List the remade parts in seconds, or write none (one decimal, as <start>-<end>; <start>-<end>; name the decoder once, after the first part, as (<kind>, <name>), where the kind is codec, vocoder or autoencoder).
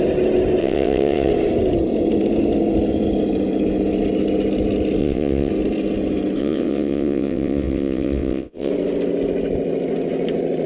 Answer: 0.6-1.3 (vocoder, WaveNeXt); 5.0-5.5; 6.4-8.7